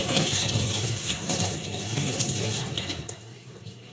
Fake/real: fake